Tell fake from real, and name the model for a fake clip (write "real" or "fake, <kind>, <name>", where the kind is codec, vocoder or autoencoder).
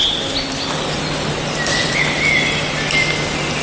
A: real